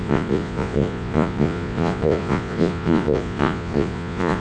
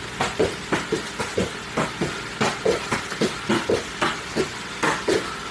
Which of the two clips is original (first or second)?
second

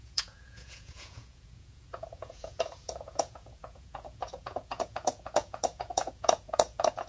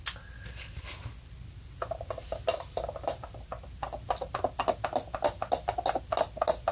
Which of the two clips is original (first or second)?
second